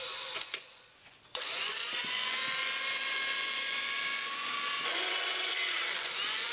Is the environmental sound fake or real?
fake